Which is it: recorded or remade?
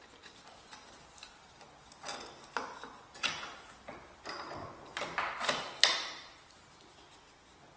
recorded